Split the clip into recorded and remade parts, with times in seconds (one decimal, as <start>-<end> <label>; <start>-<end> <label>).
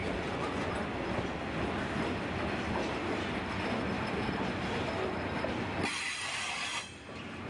0.0-0.7 remade; 0.7-7.5 recorded